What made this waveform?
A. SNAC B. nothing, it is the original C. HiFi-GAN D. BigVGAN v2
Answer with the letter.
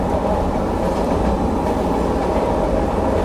B